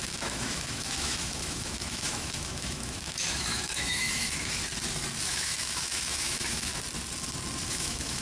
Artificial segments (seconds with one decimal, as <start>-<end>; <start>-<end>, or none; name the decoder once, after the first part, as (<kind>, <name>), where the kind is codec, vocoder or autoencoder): 0.0-4.6 (autoencoder, DAC-VAE); 5.2-6.7; 7.7-8.2